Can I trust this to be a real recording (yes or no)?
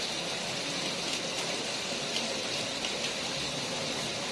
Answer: yes